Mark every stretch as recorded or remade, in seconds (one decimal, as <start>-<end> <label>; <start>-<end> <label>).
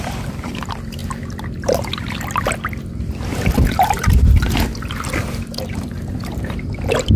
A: 0.0-1.0 remade; 1.0-5.3 recorded; 5.3-7.2 remade